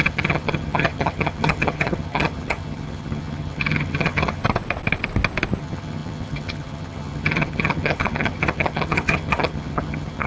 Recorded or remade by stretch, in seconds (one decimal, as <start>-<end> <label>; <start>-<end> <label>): 0.0-4.4 remade; 4.4-5.6 recorded; 5.6-10.3 remade